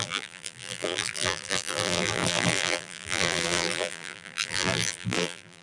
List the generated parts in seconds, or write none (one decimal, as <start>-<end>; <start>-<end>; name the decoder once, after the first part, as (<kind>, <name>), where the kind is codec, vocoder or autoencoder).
0.0-5.6 (vocoder, BigVGAN v2)